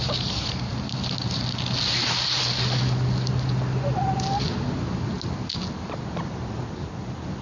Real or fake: real